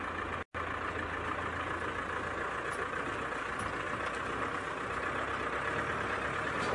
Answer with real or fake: real